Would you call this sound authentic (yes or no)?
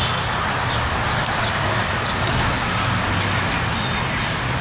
yes